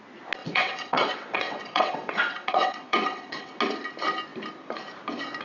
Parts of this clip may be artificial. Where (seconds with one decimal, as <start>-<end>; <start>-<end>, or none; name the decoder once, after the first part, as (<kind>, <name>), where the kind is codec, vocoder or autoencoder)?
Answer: 0.4-3.6 (vocoder, WaveNeXt)